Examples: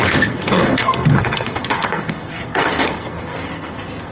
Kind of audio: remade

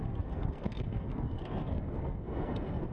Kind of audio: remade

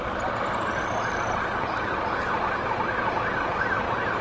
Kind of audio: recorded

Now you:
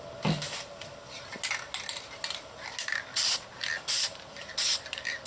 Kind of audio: recorded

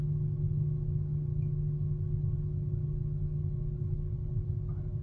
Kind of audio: recorded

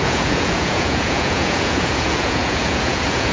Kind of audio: remade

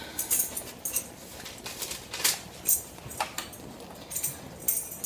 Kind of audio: recorded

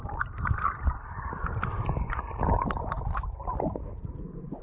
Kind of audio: remade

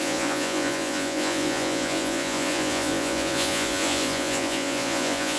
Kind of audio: remade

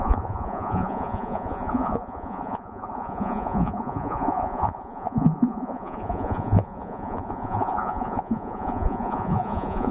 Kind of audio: remade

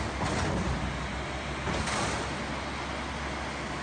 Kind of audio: recorded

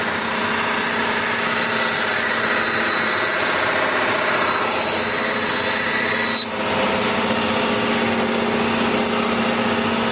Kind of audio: recorded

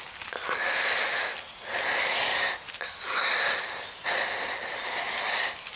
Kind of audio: recorded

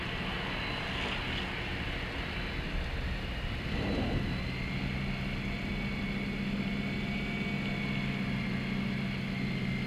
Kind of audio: recorded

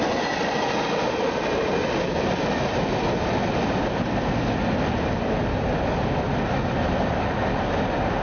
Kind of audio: recorded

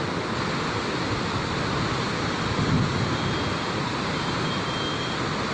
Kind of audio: recorded